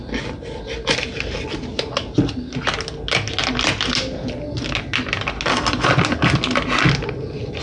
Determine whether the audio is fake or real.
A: real